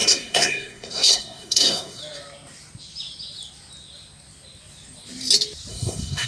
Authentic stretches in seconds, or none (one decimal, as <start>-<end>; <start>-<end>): 2.0-5.7